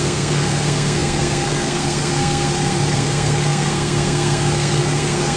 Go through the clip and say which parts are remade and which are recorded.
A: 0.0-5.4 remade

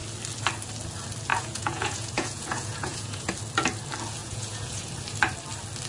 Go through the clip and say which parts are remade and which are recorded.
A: 0.0-1.3 recorded; 1.3-3.3 remade; 3.3-4.2 recorded; 4.2-4.9 remade; 4.9-5.9 recorded

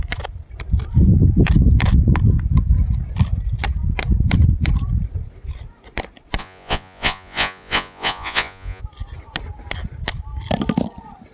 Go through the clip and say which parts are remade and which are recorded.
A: 0.0-6.4 recorded; 6.4-8.8 remade; 8.8-11.3 recorded

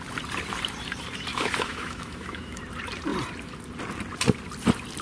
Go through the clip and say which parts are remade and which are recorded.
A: 0.0-1.3 recorded; 1.3-2.6 remade; 2.6-5.0 recorded

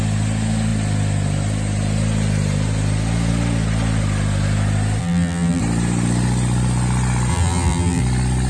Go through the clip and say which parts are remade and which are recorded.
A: 0.0-5.0 recorded; 5.0-5.6 remade; 5.6-7.3 recorded; 7.3-8.0 remade; 8.0-8.5 recorded

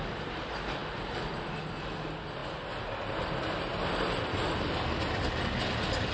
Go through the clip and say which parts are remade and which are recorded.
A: 0.0-6.1 recorded

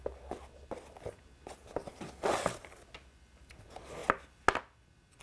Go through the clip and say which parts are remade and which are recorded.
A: 0.0-5.2 recorded

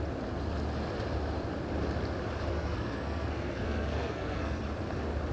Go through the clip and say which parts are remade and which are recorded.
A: 0.0-2.5 recorded; 2.5-4.6 remade; 4.6-5.3 recorded